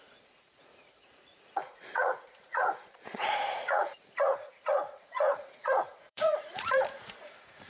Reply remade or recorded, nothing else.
remade